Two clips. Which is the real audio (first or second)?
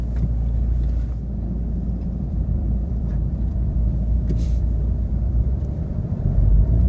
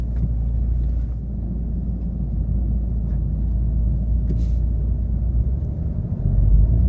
second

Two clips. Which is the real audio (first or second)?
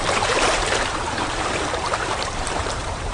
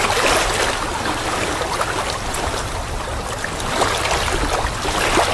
second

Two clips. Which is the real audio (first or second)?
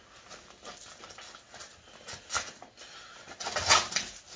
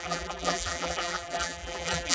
first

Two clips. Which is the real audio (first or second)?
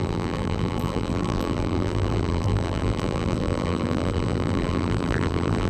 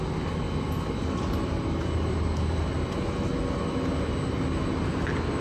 second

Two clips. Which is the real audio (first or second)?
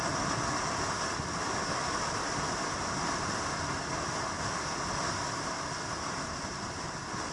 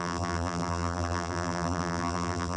first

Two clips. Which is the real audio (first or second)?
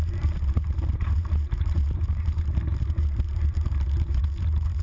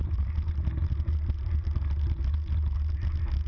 second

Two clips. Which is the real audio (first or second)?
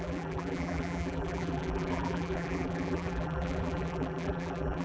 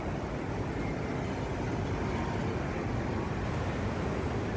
second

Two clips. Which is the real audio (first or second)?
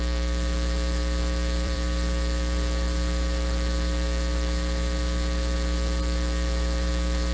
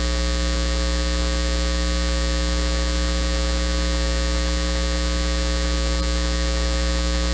second